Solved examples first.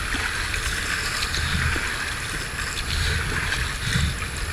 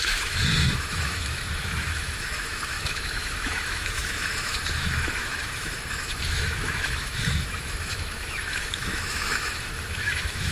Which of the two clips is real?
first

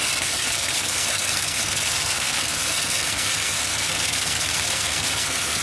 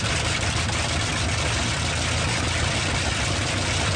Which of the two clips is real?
second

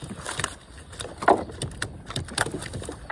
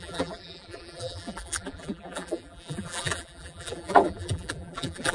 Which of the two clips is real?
first